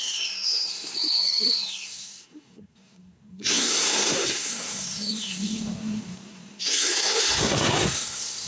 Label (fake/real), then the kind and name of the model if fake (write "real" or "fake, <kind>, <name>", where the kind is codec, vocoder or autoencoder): fake, codec, SNAC